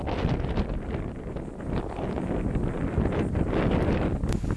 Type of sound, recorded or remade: recorded